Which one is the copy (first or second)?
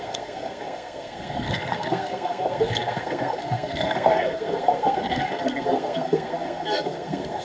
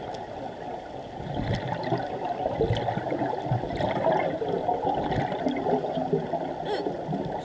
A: first